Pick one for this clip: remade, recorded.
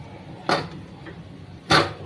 recorded